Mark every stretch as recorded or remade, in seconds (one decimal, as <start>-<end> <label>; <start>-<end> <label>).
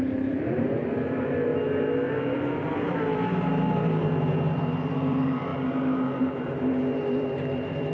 0.0-1.5 remade; 1.5-2.1 recorded; 2.1-5.5 remade; 5.5-6.2 recorded; 6.2-7.9 remade